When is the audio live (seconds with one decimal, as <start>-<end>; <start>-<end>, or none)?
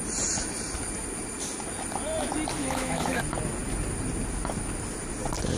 0.0-2.6; 3.2-5.6